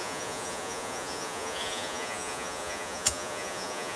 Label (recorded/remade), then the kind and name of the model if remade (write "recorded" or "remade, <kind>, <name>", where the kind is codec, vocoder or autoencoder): remade, vocoder, Vocos